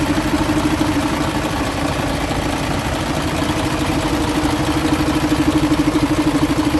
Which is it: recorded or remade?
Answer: remade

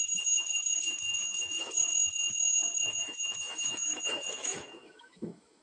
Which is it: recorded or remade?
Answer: remade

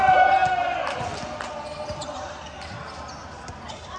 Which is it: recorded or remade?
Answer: recorded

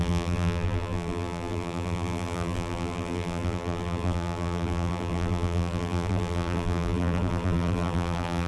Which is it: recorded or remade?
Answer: remade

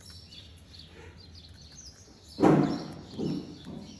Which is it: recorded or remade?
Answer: recorded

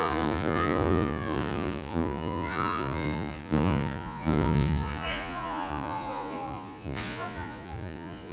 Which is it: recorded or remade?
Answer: remade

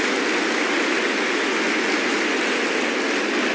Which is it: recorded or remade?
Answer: recorded